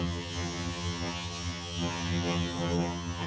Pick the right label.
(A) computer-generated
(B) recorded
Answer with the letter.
A